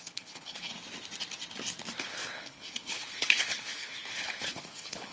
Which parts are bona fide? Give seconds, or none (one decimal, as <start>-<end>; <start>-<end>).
0.7-2.0